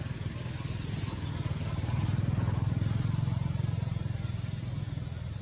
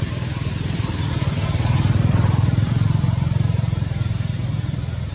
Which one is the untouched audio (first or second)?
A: first